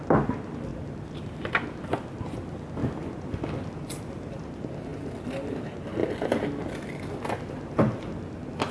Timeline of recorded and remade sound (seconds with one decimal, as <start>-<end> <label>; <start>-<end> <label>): 0.0-8.7 recorded